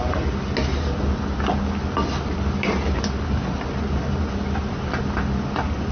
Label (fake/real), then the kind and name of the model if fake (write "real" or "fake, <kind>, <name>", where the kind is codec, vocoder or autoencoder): real